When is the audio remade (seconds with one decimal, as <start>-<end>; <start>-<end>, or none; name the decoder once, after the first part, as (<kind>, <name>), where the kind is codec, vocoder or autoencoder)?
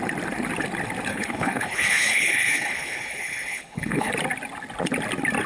1.1-4.1 (codec, HILCodec)